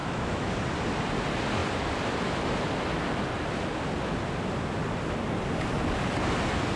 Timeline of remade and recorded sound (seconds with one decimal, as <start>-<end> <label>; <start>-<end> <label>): 0.0-0.5 remade; 0.5-6.8 recorded